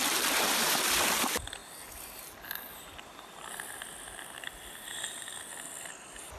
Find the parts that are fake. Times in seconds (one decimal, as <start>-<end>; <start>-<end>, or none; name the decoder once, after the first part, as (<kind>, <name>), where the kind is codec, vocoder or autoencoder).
none